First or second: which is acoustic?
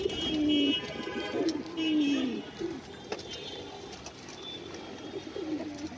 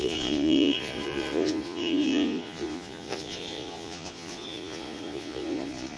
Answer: first